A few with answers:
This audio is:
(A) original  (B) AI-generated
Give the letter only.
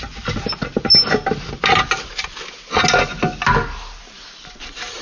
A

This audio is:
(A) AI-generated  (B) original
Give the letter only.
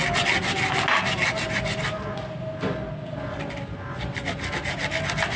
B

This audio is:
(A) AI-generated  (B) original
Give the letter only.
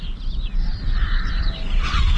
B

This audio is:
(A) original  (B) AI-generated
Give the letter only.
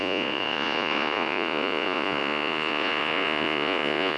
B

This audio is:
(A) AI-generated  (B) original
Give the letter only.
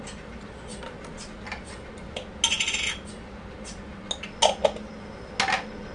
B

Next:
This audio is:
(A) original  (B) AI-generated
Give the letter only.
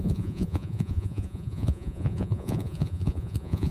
B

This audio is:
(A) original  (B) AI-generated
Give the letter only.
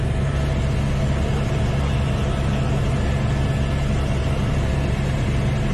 A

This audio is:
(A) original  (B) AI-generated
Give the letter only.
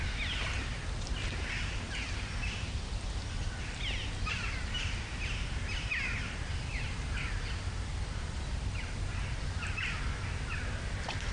A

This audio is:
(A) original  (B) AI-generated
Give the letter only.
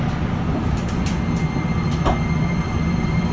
A